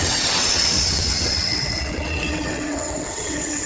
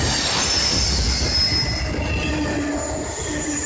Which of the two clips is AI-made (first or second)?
first